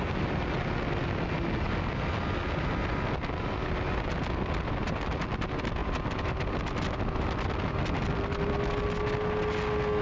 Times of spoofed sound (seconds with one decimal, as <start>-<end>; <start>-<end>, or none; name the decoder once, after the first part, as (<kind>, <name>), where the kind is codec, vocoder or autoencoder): none